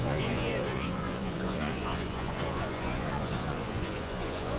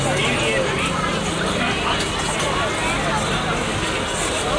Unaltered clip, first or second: second